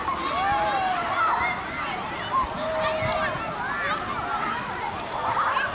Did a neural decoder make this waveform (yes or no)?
no